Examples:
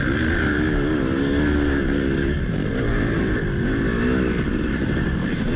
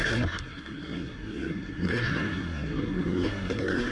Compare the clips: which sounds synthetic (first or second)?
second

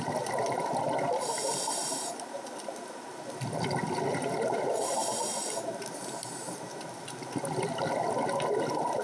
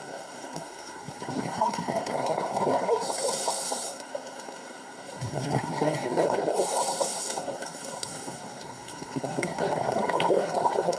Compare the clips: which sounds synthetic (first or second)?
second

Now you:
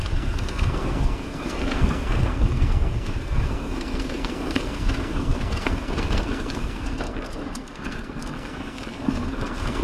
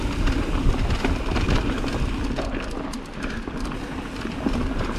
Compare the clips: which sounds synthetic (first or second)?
first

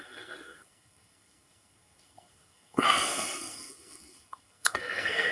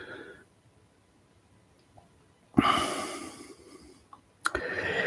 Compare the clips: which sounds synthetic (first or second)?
first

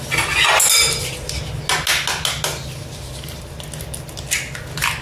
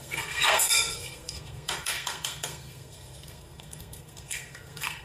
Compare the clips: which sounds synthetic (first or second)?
second